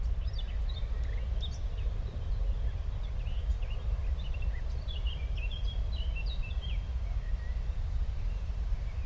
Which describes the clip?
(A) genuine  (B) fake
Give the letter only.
A